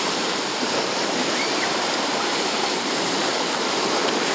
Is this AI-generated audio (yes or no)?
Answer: yes